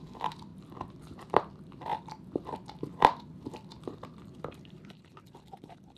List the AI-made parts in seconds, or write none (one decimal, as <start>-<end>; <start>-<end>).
0.0-0.5; 1.0-6.0